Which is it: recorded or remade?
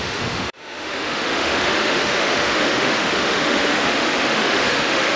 remade